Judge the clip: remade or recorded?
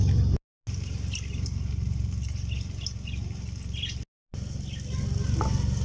recorded